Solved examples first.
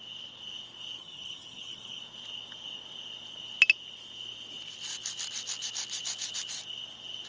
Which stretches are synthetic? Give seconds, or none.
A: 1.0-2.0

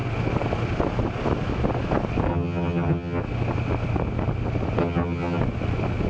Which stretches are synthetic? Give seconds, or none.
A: 2.3-3.2; 4.8-5.4